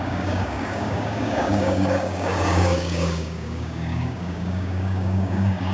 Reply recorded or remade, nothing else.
remade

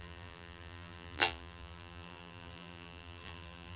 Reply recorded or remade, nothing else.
remade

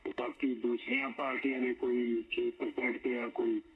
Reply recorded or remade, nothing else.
remade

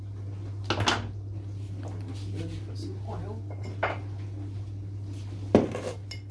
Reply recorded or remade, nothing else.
recorded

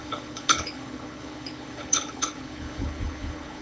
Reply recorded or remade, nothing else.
remade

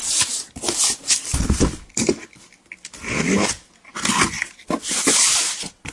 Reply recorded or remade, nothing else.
recorded